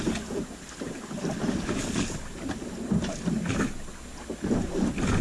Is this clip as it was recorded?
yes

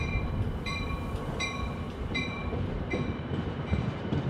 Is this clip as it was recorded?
no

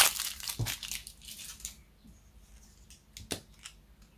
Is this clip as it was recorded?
yes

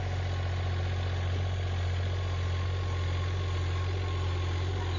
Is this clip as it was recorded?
yes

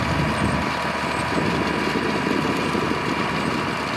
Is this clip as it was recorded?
yes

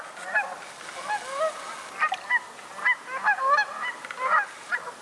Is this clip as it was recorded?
yes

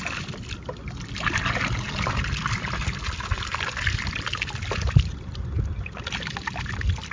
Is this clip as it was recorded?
yes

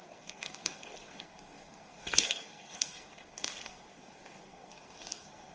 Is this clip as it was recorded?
no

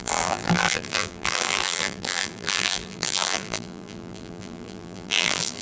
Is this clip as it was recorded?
no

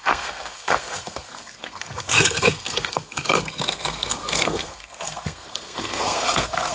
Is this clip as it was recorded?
no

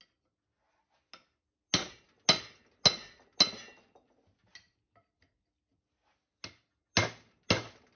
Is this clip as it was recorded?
yes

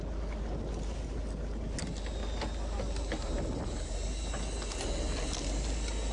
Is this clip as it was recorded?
yes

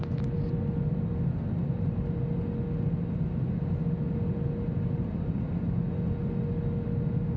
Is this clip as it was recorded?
yes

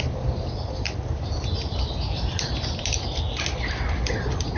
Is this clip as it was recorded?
yes